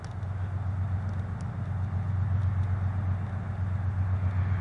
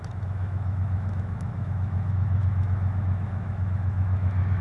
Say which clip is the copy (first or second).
second